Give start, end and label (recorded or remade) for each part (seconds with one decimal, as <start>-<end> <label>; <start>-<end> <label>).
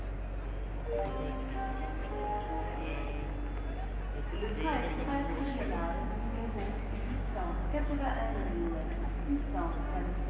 0.0-2.0 recorded; 2.0-3.1 remade; 3.1-5.1 recorded; 5.1-9.4 remade; 9.4-10.3 recorded